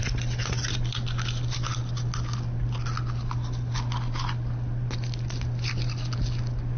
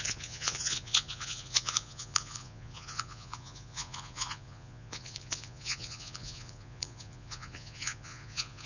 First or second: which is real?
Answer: first